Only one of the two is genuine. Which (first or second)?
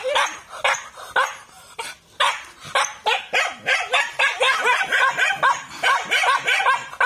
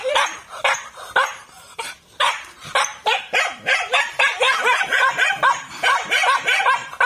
first